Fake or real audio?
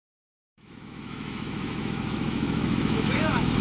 fake